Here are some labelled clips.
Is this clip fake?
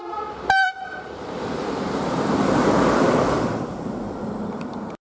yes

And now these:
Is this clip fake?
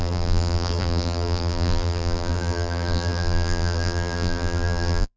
yes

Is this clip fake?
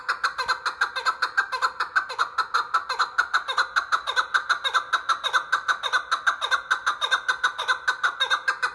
no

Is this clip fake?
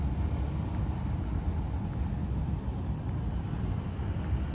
no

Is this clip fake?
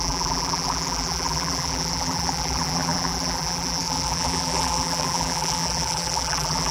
yes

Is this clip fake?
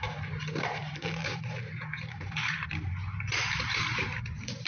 yes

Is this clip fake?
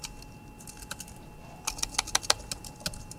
no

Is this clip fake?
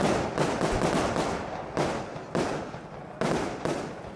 no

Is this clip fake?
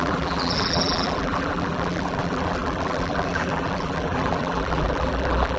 yes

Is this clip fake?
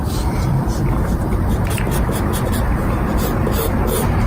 yes